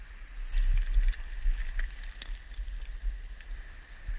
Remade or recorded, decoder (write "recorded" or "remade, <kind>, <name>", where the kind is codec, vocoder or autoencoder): recorded